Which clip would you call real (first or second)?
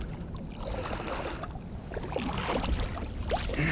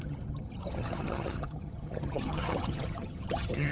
first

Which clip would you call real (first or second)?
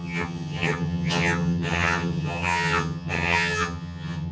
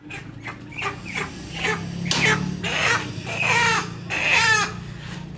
second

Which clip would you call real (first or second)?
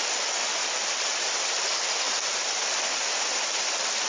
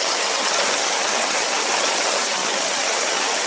first